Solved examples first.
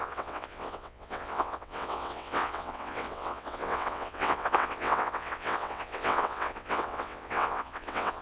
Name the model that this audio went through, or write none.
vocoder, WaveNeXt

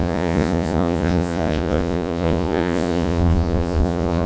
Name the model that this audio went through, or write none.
vocoder, Vocos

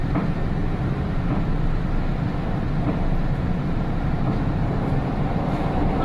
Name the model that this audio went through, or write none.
vocoder, BigVGAN v2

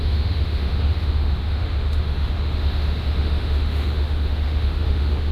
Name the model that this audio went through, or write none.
autoencoder, DAC-VAE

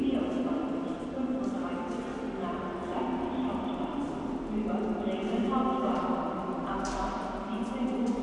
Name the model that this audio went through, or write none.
none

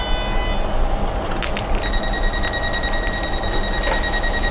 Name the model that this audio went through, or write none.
none